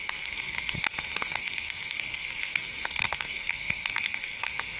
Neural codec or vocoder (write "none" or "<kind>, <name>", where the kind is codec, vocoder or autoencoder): codec, SNAC